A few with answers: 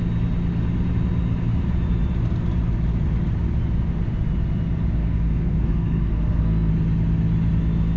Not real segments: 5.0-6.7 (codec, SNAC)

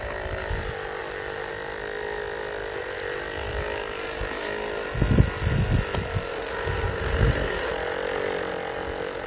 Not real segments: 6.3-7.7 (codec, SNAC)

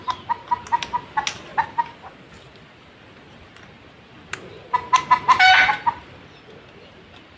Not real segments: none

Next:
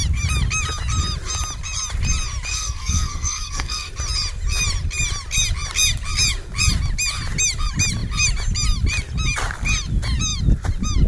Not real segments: 2.5-3.9 (codec, SNAC)